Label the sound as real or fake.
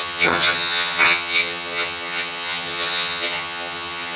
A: fake